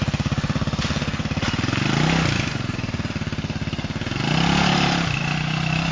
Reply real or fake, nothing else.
real